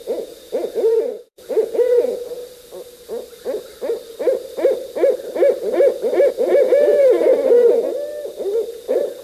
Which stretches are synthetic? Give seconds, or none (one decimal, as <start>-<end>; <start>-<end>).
0.0-2.4; 6.3-7.3; 8.7-9.2

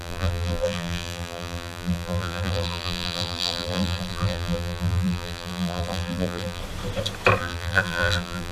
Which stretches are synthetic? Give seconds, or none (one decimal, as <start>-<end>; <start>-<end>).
0.0-6.6; 7.4-8.5

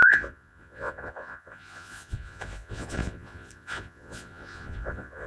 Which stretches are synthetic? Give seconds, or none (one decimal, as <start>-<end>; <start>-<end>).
0.0-5.3

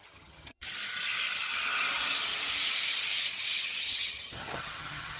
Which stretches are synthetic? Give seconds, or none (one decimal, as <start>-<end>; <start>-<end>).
0.0-0.7; 3.8-5.2

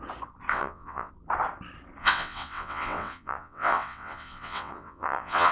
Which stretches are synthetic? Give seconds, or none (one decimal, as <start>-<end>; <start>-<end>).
0.5-1.1; 2.0-5.5